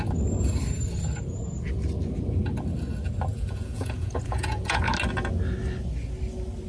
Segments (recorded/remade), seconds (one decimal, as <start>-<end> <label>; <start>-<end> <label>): 0.0-3.3 recorded; 3.3-4.9 remade; 4.9-6.7 recorded